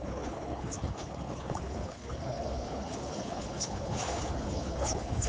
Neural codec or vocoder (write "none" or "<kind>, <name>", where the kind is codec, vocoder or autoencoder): codec, HILCodec